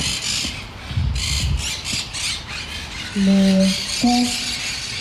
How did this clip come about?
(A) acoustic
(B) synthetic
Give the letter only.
A